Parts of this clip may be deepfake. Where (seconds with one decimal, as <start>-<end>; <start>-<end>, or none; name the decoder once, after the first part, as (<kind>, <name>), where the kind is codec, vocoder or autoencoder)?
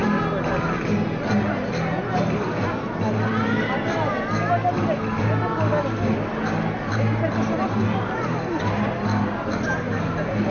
none